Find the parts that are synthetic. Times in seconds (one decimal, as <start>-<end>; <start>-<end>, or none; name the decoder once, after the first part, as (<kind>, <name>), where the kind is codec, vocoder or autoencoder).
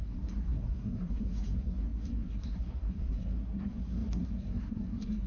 0.0-5.3 (codec, SNAC)